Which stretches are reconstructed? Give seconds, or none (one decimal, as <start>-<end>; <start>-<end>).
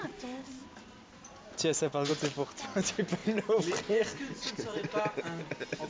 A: none